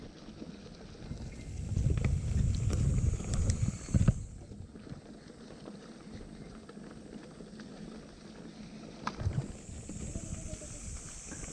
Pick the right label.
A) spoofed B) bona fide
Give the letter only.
B